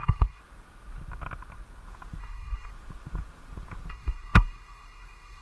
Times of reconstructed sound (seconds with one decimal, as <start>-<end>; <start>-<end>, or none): 0.0-0.4; 2.2-2.7; 3.9-5.4